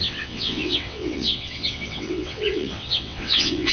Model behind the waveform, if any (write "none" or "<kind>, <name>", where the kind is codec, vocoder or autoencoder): vocoder, WaveNeXt